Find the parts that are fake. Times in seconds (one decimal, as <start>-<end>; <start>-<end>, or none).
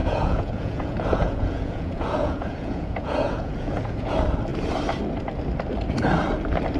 0.0-4.1